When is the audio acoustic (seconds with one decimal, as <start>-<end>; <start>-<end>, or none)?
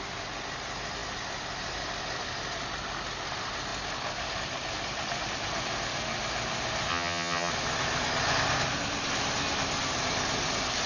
0.0-6.9; 7.5-10.9